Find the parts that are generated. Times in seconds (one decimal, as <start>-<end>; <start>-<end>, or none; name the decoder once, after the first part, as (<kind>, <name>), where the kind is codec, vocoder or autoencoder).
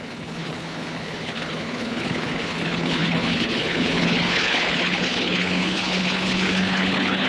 0.0-7.3 (codec, HILCodec)